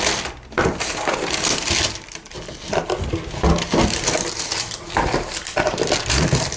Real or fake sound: real